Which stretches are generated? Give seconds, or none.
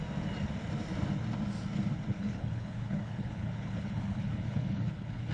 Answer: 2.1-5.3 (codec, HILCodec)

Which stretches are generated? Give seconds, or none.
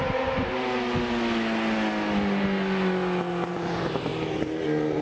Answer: 0.0-0.5 (vocoder, BigVGAN v2); 3.5-4.1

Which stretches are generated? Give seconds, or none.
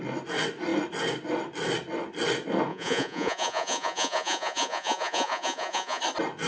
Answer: 2.7-6.0 (vocoder, Vocos)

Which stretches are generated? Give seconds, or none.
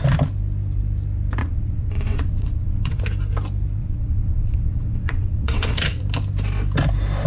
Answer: 1.4-3.0 (vocoder, WaveNeXt); 3.8-6.0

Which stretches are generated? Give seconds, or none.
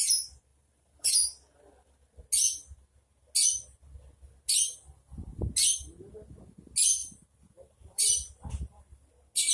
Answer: 0.5-1.1 (vocoder, BigVGAN v2); 7.0-9.1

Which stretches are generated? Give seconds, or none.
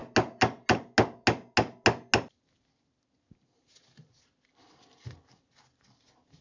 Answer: none